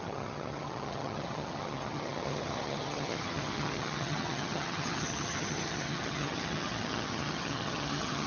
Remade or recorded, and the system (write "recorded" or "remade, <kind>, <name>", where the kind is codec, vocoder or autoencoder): remade, vocoder, HiFi-GAN